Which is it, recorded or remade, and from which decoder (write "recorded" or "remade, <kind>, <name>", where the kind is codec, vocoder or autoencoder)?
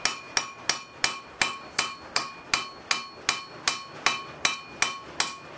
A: recorded